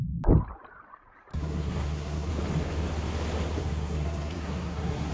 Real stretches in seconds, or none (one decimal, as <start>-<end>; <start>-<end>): 0.0-1.3; 2.3-3.6